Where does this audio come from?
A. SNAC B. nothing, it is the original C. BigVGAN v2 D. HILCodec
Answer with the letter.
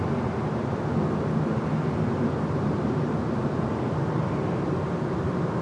B